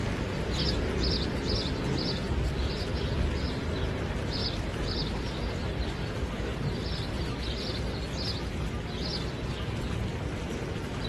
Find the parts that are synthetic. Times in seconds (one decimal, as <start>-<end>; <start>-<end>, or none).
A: 4.4-7.2